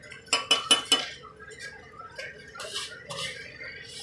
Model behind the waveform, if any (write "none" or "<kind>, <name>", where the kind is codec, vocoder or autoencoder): none